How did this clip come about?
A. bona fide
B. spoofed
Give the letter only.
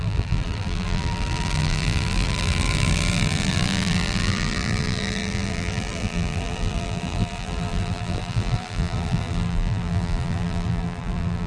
B